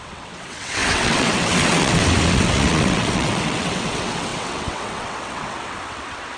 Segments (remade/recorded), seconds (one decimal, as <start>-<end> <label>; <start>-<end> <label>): 0.0-6.4 remade